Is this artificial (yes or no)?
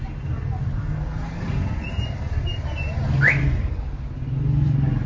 no